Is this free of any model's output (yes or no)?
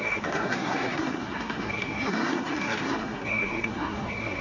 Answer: no